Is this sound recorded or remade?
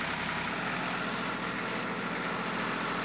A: recorded